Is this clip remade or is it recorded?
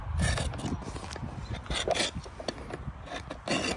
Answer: recorded